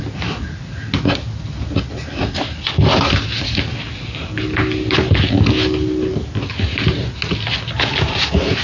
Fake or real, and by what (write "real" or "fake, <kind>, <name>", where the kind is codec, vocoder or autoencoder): real